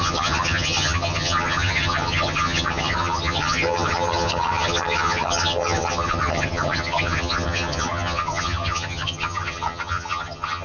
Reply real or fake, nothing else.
fake